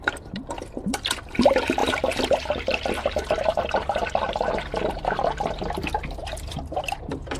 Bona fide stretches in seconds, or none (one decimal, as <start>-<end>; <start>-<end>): none